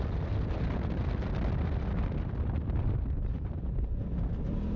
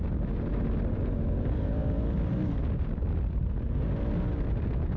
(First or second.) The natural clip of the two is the second